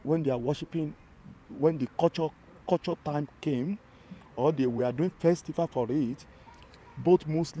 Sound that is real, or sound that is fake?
fake